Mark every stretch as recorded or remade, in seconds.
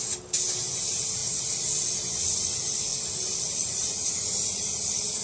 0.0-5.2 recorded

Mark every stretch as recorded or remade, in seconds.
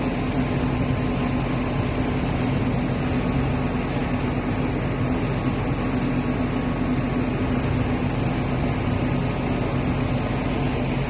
0.0-11.1 recorded